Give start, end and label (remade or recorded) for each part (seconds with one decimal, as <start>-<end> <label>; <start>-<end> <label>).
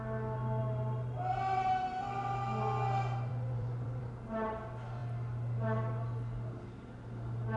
0.0-3.3 recorded; 3.3-4.0 remade; 4.0-7.6 recorded